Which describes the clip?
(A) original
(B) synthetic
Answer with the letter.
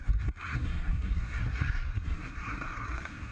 B